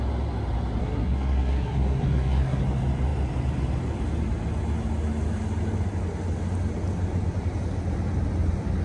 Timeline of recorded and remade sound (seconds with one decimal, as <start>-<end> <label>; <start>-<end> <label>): 0.0-0.8 recorded; 0.8-2.6 remade; 2.6-8.8 recorded